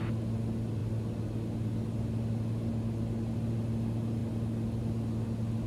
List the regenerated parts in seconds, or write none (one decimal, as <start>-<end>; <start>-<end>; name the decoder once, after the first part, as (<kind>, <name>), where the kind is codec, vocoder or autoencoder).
none